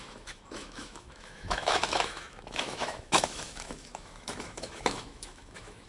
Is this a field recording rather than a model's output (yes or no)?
no